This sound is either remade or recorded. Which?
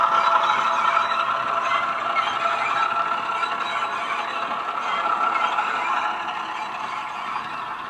recorded